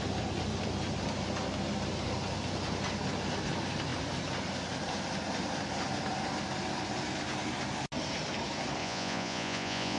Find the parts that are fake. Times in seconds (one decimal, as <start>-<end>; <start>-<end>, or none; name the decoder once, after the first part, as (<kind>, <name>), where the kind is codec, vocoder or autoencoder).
8.8-10.0 (vocoder, Vocos)